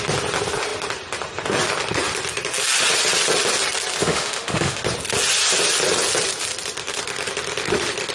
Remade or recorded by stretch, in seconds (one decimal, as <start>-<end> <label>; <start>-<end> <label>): 0.0-4.0 recorded; 4.0-4.8 remade; 4.8-8.1 recorded